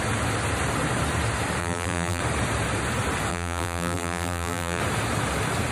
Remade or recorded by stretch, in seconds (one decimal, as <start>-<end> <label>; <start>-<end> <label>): 0.0-1.6 recorded; 1.6-2.2 remade; 2.2-3.3 recorded; 3.3-4.8 remade; 4.8-5.7 recorded